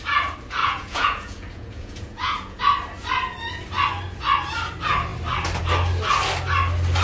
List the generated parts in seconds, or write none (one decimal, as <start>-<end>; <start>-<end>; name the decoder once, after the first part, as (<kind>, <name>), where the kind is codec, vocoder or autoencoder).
0.6-2.6 (vocoder, Vocos)